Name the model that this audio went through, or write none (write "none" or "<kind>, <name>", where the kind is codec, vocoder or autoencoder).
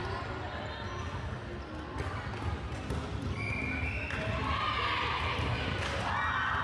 none